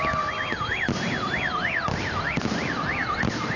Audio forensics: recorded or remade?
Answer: recorded